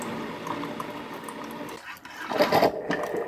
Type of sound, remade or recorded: recorded